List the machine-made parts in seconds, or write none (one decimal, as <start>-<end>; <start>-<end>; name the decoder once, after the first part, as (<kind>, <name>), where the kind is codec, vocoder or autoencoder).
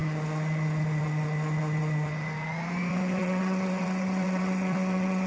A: 3.2-5.3 (vocoder, WaveNeXt)